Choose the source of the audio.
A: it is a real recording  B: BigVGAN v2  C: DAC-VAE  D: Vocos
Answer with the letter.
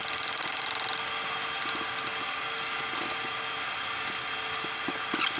A